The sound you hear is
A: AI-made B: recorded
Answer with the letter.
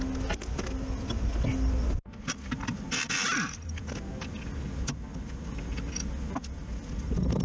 B